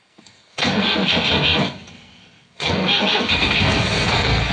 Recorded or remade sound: remade